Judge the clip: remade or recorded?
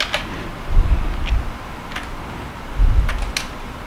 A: recorded